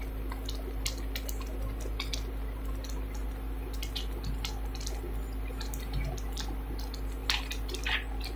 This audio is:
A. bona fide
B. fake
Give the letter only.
A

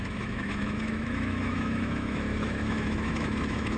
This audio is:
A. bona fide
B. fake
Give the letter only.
B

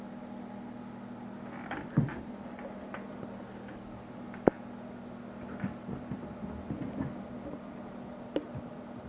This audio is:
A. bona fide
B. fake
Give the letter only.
A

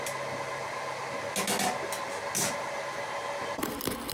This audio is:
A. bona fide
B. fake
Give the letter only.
A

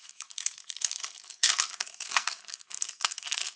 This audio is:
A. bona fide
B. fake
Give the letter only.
B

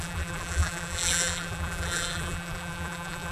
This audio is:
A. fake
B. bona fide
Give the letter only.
A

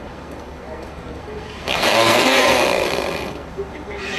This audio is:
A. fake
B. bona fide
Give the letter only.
A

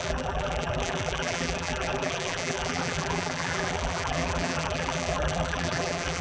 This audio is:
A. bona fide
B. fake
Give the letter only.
B